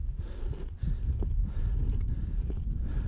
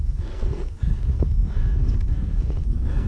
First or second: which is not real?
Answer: second